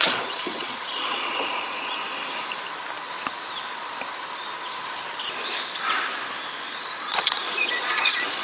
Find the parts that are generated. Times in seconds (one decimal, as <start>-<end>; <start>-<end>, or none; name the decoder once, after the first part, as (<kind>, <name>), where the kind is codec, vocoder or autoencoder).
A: 0.0-2.0 (vocoder, Vocos); 7.0-8.4